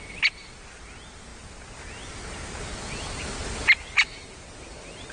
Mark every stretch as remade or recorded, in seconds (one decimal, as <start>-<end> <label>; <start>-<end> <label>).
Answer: 0.0-5.1 recorded